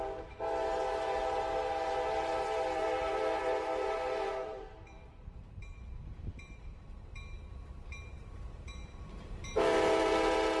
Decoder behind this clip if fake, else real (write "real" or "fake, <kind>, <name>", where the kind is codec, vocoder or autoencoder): fake, vocoder, BigVGAN v2